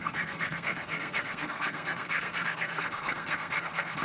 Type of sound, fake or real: fake